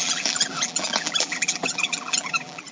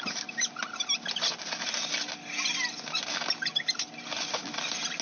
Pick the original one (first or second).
second